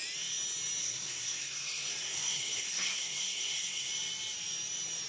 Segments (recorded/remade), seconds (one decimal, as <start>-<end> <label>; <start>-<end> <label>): 0.0-0.8 recorded; 0.8-3.9 remade; 3.9-5.1 recorded